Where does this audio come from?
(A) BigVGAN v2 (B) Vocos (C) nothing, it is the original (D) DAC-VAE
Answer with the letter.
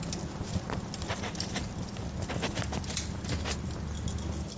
C